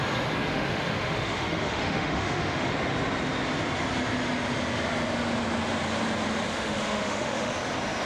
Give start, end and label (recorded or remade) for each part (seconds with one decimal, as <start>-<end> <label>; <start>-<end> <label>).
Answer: 0.0-0.5 recorded; 0.5-2.7 remade; 2.7-6.5 recorded; 6.5-7.5 remade; 7.5-8.1 recorded